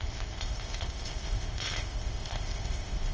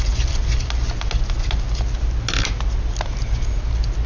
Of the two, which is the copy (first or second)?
first